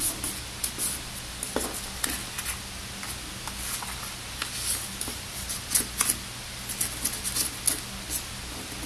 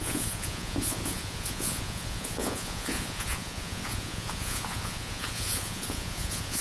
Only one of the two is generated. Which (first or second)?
second